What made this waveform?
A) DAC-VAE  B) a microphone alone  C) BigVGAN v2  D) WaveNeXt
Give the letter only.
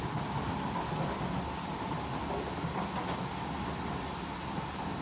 B